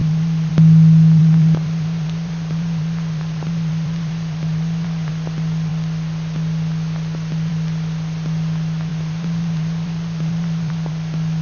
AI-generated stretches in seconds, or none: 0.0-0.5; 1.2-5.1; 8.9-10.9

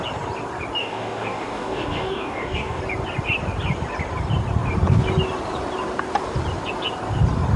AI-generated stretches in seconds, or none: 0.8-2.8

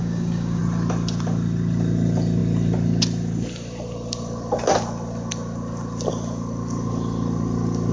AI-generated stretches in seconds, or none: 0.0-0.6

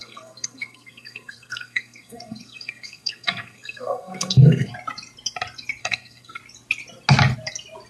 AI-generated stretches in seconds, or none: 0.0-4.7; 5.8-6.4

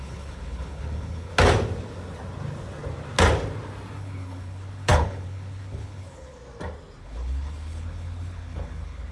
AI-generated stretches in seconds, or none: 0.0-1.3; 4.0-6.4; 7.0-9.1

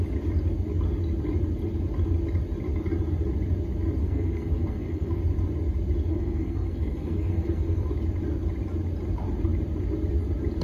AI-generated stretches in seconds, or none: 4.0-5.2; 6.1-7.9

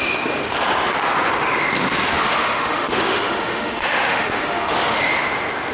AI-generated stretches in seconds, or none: 2.1-5.1